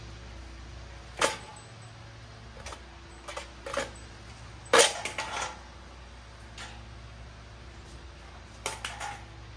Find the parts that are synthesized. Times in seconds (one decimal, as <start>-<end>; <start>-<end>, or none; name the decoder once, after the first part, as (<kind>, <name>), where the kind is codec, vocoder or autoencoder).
none